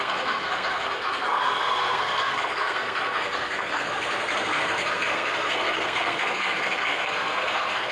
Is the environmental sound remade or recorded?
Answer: remade